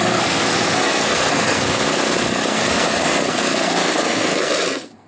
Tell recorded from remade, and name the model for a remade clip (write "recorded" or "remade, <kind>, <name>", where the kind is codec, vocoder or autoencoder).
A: remade, codec, SNAC